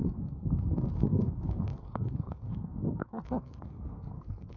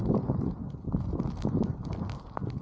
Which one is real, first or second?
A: second